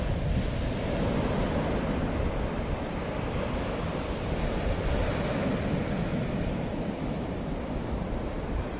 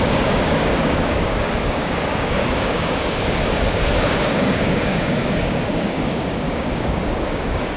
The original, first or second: first